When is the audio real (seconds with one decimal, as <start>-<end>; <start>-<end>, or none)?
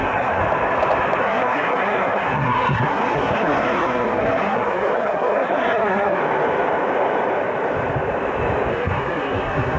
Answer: 0.4-1.2; 6.2-8.7